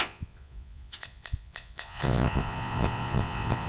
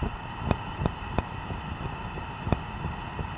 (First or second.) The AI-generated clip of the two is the first